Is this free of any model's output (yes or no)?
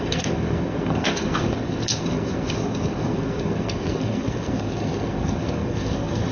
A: no